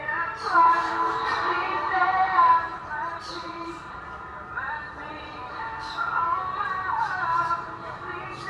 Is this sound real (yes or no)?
no